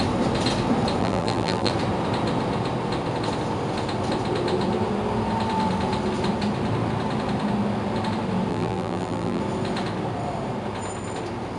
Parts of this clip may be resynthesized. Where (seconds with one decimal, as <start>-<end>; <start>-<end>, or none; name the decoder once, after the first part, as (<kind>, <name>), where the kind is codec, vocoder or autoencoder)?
1.0-1.7 (vocoder, BigVGAN v2); 8.5-9.4